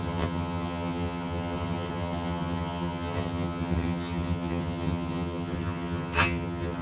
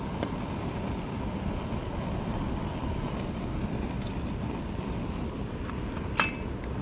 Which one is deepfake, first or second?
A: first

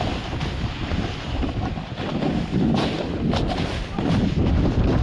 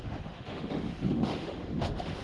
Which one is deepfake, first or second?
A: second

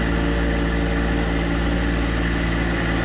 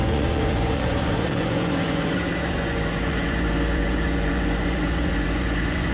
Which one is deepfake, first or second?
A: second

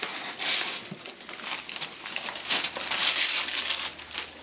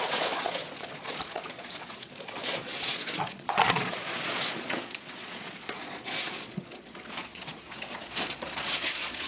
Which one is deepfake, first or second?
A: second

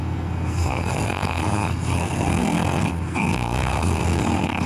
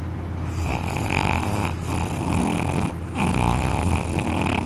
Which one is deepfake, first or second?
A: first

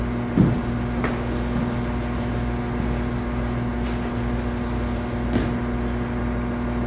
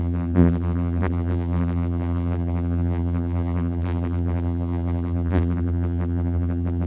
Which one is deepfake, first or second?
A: second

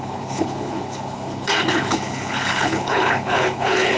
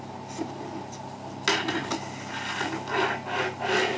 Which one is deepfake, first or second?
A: first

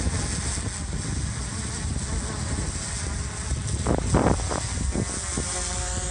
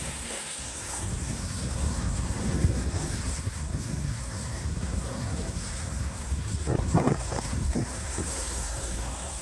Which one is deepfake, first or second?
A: second